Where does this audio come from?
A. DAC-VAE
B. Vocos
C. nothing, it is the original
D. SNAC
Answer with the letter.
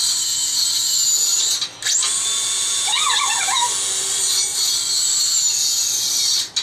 C